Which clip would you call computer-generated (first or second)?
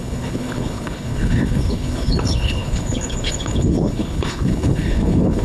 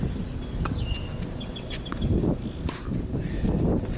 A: first